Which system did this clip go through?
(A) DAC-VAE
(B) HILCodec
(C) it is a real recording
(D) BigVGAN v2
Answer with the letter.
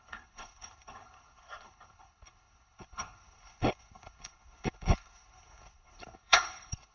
B